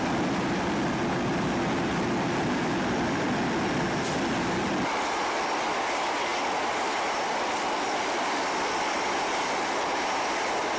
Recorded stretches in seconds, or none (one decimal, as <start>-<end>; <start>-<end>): 0.0-10.8